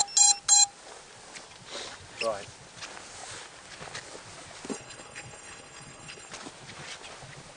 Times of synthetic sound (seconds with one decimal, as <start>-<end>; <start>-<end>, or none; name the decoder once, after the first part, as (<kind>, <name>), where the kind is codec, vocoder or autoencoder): 4.7-6.3 (codec, HILCodec)